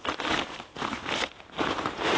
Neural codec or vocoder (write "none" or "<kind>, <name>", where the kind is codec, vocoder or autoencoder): none